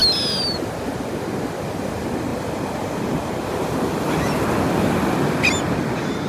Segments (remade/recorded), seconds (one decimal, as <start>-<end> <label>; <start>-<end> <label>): 0.0-6.3 recorded